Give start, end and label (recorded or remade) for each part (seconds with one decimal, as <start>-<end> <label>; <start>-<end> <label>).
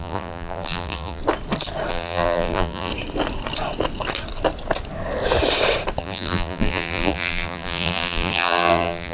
0.0-1.2 remade; 1.2-1.9 recorded; 1.9-2.9 remade; 2.9-6.0 recorded; 6.0-9.1 remade